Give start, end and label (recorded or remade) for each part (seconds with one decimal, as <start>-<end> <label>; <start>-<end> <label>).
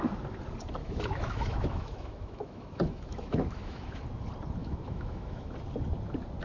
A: 0.0-0.8 recorded; 0.8-4.0 remade; 4.0-4.6 recorded; 4.6-5.5 remade; 5.5-6.4 recorded